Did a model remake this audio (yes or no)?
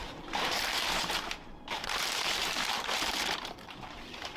yes